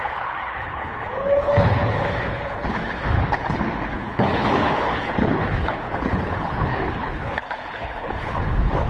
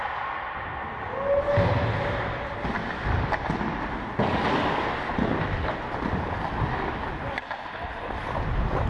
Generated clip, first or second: first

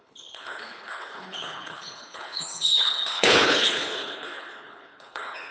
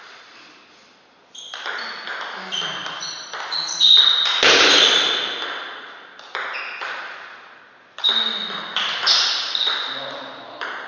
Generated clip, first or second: first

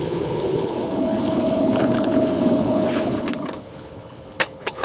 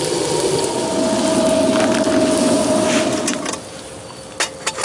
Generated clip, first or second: first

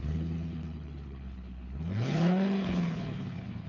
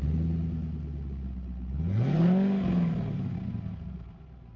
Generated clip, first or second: first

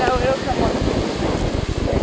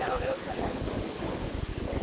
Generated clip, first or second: second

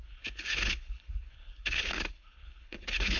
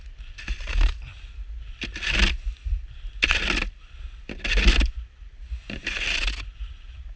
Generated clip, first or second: first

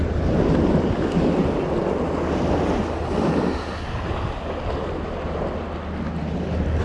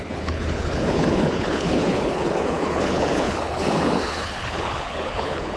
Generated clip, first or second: second